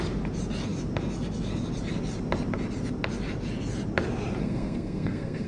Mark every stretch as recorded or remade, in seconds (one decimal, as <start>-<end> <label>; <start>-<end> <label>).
0.0-4.4 recorded; 4.4-5.5 remade